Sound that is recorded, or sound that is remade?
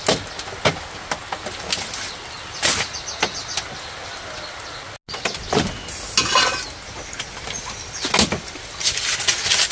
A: recorded